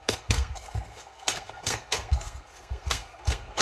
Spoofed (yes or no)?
yes